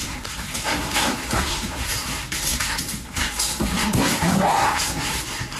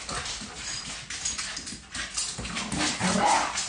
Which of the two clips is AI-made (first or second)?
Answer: first